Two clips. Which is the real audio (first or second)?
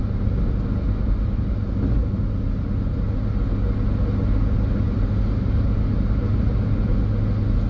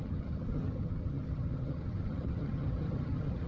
first